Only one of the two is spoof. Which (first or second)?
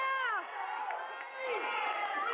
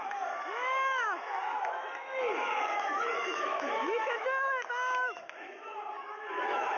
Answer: second